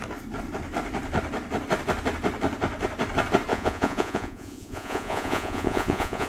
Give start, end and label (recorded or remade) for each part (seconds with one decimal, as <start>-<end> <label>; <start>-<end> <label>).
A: 0.0-3.5 recorded; 3.5-6.3 remade

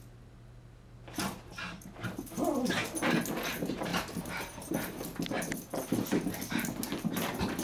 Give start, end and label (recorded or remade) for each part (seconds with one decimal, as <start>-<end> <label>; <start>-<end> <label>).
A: 0.0-3.9 recorded; 3.9-4.7 remade; 4.7-7.6 recorded